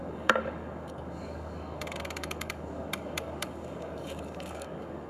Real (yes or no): no